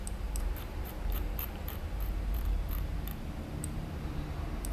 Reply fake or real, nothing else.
fake